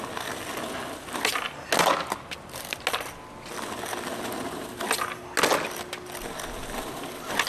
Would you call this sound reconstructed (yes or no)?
no